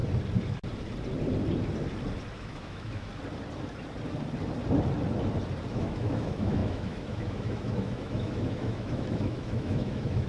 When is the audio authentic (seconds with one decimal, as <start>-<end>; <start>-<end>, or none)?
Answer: 0.0-2.3; 3.1-5.7

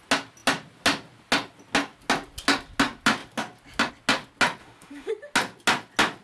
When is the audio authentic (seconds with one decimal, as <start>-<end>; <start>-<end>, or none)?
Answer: 0.0-4.6; 5.1-6.2

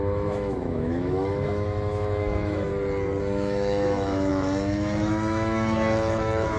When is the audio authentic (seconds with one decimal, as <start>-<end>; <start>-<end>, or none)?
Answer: 2.7-3.2

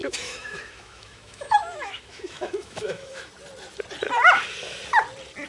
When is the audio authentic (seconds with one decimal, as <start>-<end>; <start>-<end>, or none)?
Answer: 3.3-5.5

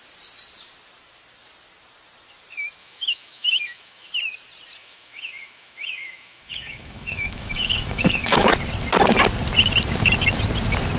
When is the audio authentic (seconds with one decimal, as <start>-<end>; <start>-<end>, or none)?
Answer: 0.0-2.8; 4.1-4.8; 8.5-11.0

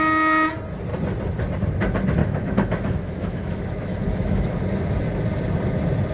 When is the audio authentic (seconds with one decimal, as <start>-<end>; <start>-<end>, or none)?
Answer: 0.0-2.2; 4.6-6.1